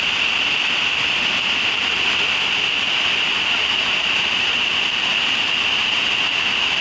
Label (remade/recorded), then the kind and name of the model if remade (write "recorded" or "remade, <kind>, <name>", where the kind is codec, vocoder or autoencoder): recorded